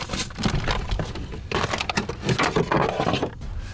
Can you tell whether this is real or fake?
real